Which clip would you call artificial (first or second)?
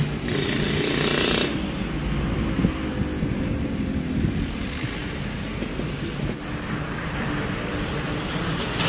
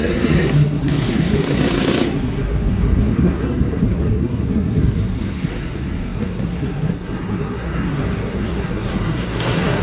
second